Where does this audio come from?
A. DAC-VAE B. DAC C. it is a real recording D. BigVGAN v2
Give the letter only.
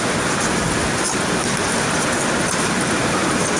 C